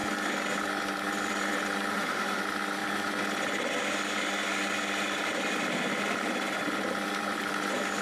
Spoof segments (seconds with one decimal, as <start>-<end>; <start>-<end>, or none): 1.9-2.4